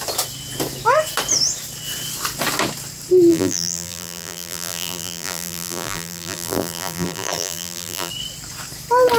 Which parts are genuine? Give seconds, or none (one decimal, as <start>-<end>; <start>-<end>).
0.0-3.3; 8.1-9.2